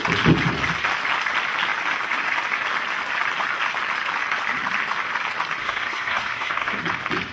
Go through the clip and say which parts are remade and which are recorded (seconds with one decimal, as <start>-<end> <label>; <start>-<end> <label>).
0.0-5.6 recorded; 5.6-6.8 remade; 6.8-7.3 recorded